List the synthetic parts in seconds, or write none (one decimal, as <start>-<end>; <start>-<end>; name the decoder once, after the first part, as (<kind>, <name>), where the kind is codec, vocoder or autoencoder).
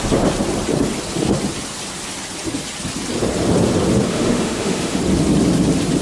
4.1-5.0 (autoencoder, DAC-VAE)